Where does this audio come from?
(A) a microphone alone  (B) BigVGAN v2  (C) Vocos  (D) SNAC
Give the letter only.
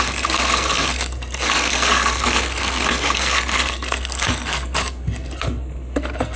D